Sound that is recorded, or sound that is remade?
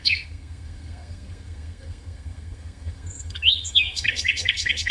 remade